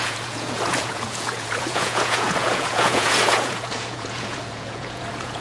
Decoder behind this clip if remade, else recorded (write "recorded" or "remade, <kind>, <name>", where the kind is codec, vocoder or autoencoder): remade, vocoder, Vocos